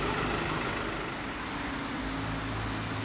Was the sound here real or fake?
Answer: real